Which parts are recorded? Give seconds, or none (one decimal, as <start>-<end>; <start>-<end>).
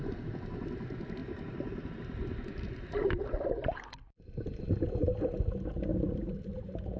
0.0-1.2; 4.6-5.9; 6.6-7.0